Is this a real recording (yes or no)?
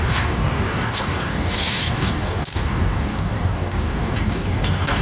no